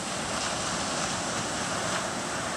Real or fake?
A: real